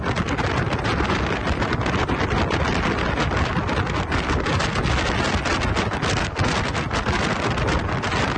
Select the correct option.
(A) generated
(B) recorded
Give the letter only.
B